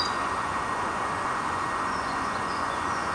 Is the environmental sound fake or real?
fake